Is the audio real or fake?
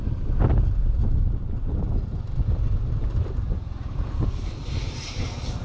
real